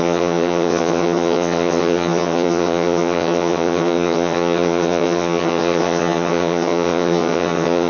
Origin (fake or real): fake